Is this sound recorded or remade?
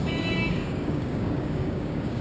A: remade